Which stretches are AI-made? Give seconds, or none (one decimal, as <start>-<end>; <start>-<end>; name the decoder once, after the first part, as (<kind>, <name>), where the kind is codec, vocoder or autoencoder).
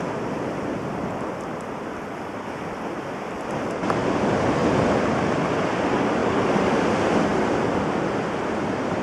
6.2-6.8 (vocoder, BigVGAN v2)